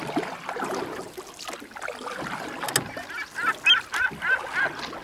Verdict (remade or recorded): recorded